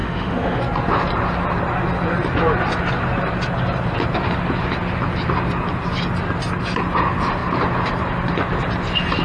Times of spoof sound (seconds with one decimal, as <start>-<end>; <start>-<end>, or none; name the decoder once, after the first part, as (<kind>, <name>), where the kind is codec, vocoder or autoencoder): 0.0-0.6 (autoencoder, DAC-VAE)